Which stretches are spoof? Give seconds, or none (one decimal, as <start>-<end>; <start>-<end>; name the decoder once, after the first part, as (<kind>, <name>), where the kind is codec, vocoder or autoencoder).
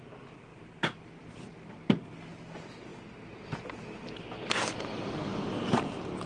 0.5-2.0 (vocoder, BigVGAN v2); 5.3-5.8